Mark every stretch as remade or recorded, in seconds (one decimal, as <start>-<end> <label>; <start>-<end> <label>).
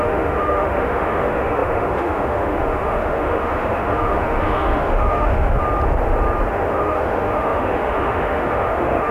0.0-5.6 remade; 5.6-6.5 recorded; 6.5-9.1 remade